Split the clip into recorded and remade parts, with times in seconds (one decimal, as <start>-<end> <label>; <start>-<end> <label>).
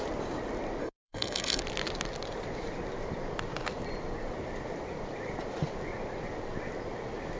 0.0-0.8 recorded; 0.8-1.6 remade; 1.6-7.4 recorded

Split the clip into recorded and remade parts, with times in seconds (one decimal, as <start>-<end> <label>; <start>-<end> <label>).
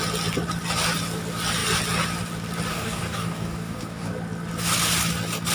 0.0-2.7 recorded; 2.7-4.1 remade; 4.1-5.5 recorded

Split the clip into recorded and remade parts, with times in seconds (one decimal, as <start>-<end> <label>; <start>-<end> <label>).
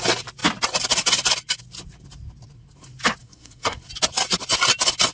0.0-3.2 recorded; 3.2-3.8 remade; 3.8-5.1 recorded